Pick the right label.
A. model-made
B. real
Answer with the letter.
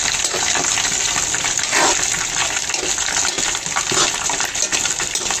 B